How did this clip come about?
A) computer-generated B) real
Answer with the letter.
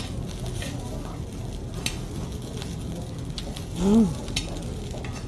B